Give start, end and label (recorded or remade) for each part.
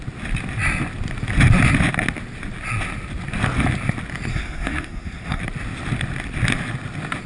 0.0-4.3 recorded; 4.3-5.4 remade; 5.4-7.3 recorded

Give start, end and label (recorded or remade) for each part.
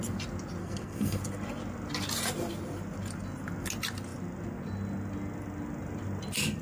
0.0-0.6 recorded; 0.6-1.2 remade; 1.2-6.6 recorded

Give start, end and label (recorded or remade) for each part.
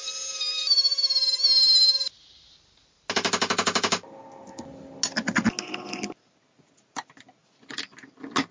0.0-8.5 recorded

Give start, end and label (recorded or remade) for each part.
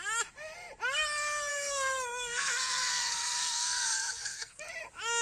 0.0-1.5 recorded; 1.5-4.6 remade; 4.6-5.2 recorded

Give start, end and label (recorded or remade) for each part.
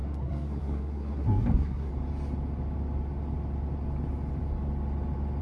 0.0-1.9 remade; 1.9-5.4 recorded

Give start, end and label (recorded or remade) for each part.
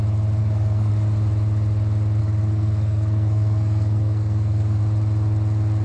0.0-0.4 recorded; 0.4-0.9 remade; 0.9-2.2 recorded; 2.2-4.8 remade; 4.8-5.8 recorded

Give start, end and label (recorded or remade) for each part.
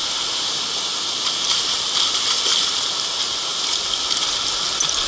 0.0-5.1 recorded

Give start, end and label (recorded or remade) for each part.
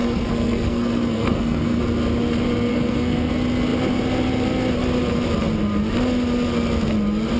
0.0-1.8 remade; 1.8-2.7 recorded; 2.7-3.3 remade; 3.3-7.4 recorded